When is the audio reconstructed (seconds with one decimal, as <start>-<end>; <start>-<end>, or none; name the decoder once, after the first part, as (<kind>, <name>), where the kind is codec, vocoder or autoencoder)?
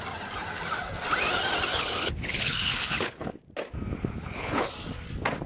1.7-3.4 (codec, HILCodec); 3.9-4.7